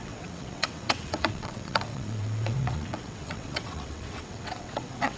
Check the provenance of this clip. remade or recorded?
remade